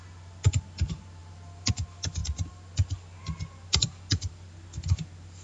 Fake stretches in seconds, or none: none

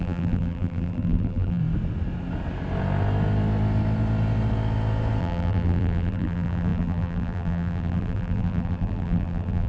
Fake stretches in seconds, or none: 0.0-1.6 (vocoder, BigVGAN v2); 5.2-9.7

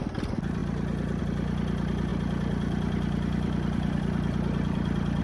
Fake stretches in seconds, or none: 0.0-0.6 (vocoder, BigVGAN v2); 1.2-5.2

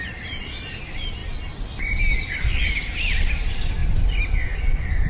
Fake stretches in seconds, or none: none

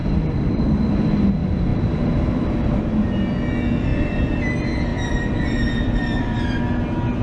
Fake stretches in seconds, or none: 0.0-0.5 (vocoder, BigVGAN v2); 1.7-2.8; 3.9-4.5; 4.9-6.6

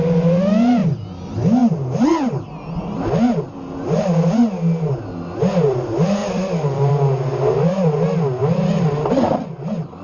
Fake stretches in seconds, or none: 6.2-6.9 (vocoder, BigVGAN v2); 8.4-9.2

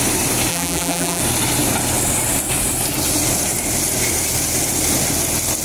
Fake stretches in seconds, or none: 0.5-1.2 (vocoder, BigVGAN v2)